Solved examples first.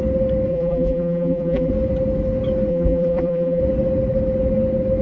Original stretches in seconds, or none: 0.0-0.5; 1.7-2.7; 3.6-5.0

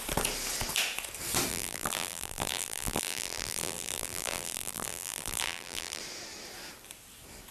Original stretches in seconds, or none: 0.0-1.5; 6.0-7.5

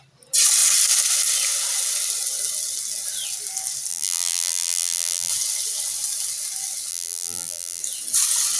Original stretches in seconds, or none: 0.0-3.9; 5.3-6.9; 7.8-8.6

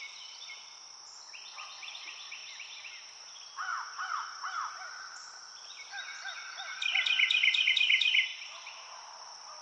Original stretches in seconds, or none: 0.0-2.4; 3.2-8.3; 9.2-9.6

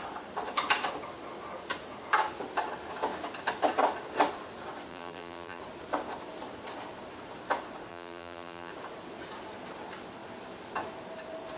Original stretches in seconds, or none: 0.0-4.9; 5.6-7.9; 8.7-11.6